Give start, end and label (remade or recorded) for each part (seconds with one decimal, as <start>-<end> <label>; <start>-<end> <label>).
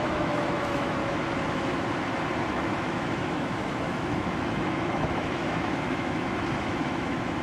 0.0-1.0 remade; 1.0-2.5 recorded; 2.5-7.4 remade